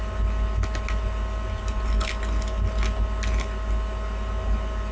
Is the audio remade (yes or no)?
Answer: no